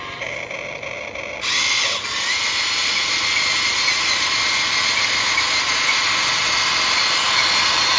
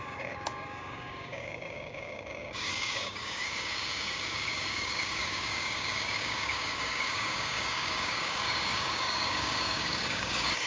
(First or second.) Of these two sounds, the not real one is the second